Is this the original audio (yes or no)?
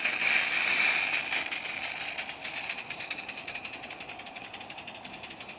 yes